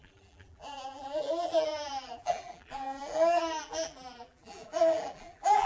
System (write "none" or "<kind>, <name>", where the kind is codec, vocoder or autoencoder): vocoder, BigVGAN v2